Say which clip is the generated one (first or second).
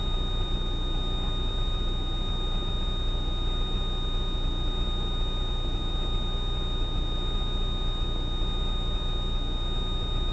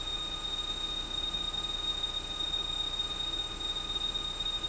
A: second